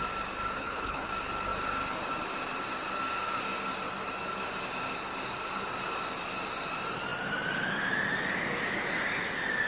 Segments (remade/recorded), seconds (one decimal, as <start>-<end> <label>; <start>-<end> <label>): 0.0-0.6 recorded; 0.6-1.1 remade; 1.1-9.7 recorded